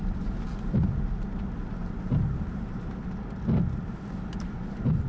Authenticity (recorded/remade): recorded